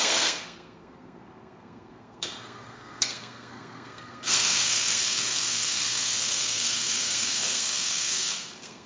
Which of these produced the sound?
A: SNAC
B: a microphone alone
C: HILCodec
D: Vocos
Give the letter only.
A